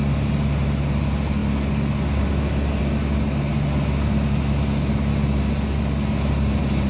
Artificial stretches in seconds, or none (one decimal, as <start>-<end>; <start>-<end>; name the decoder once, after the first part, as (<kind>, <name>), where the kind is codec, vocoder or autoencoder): none